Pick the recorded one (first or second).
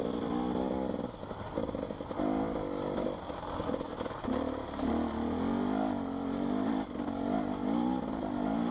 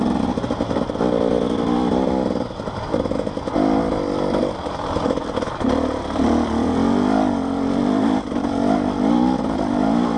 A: first